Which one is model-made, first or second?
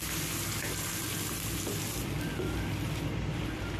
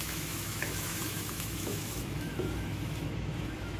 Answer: second